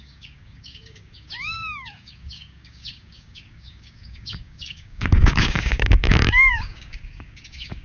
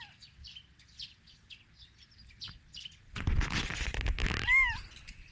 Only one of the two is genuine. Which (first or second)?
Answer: second